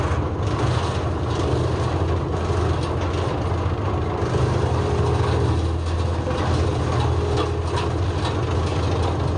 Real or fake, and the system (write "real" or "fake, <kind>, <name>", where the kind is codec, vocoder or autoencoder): real